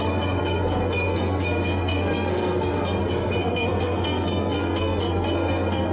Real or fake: fake